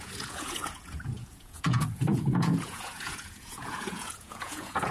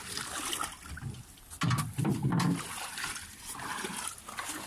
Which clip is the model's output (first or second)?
first